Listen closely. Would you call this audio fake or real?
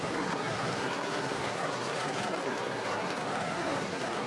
fake